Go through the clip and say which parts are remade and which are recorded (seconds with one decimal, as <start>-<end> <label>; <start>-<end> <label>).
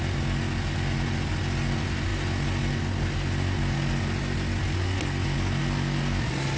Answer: 0.0-6.6 recorded